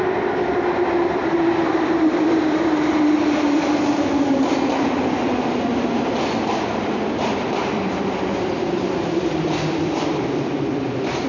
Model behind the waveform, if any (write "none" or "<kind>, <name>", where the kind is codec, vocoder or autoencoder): vocoder, BigVGAN v2